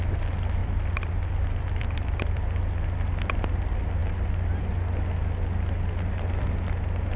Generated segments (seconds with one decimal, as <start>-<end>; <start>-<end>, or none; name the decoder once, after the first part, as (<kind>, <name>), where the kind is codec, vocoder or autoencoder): 0.6-2.4 (vocoder, BigVGAN v2)